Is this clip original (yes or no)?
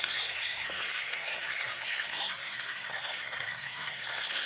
no